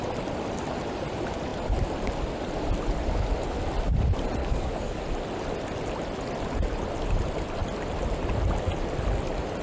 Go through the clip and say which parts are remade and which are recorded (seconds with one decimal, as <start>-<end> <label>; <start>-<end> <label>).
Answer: 0.0-4.4 recorded; 4.4-5.0 remade; 5.0-9.6 recorded